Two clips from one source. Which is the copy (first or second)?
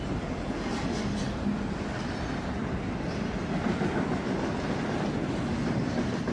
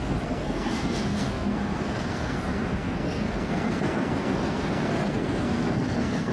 second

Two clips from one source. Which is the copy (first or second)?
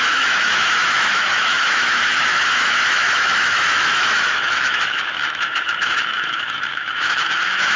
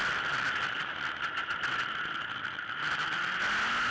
first